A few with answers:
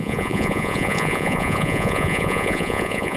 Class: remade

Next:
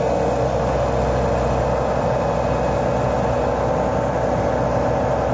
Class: recorded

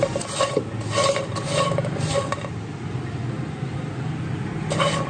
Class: recorded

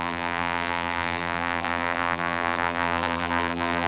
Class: remade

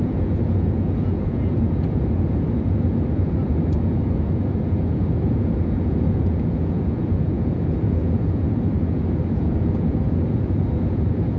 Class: remade